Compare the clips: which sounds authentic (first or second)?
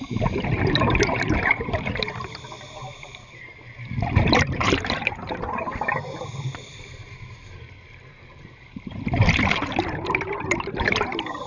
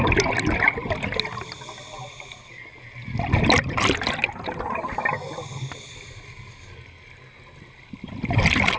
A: second